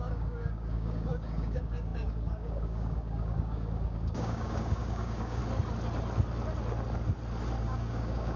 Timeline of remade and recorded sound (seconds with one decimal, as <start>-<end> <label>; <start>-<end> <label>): 0.0-5.4 remade; 5.4-7.6 recorded; 7.6-8.4 remade